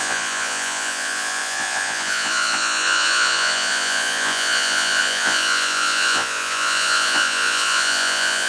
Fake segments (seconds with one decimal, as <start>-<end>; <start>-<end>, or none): 0.0-8.5